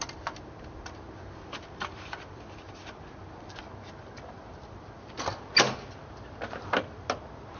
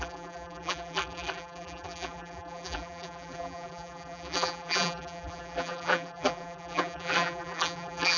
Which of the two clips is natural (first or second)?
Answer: first